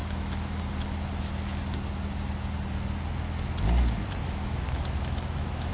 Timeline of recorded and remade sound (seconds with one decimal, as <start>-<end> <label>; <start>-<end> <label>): 0.0-0.6 remade; 0.6-4.2 recorded; 4.2-5.7 remade